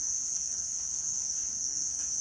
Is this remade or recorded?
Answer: remade